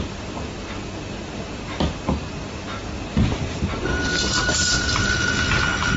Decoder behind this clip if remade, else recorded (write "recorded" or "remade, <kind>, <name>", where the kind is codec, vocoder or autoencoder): recorded